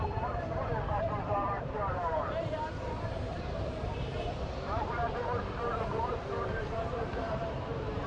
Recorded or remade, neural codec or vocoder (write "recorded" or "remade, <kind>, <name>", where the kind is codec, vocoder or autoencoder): remade, vocoder, BigVGAN v2